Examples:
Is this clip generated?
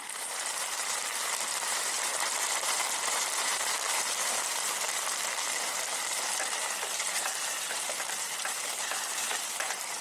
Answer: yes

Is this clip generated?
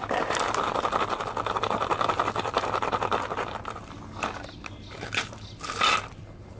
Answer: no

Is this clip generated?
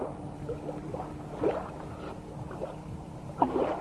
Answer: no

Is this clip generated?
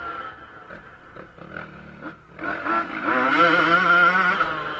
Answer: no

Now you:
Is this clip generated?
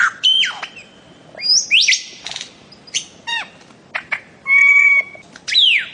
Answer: no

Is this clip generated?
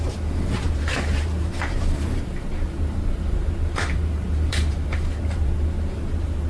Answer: yes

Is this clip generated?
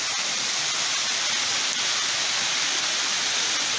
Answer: no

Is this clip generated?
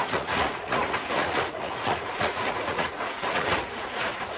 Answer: yes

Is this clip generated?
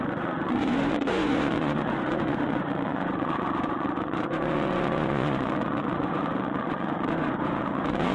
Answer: yes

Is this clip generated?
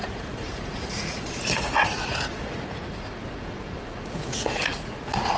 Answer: yes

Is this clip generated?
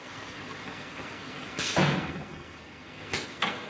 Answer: yes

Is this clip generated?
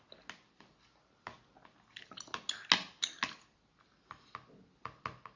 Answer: no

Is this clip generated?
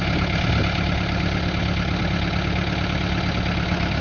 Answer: no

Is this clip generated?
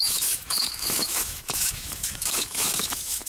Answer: yes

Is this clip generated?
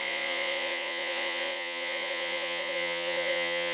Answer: yes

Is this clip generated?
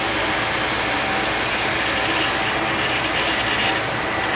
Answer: no